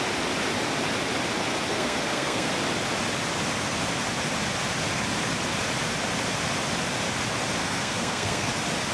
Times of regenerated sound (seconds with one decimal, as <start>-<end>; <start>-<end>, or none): 1.7-2.5; 7.6-8.5